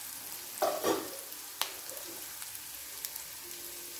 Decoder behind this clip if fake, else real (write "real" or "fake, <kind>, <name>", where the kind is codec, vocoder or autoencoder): real